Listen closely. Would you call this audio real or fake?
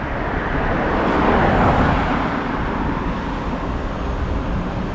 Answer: real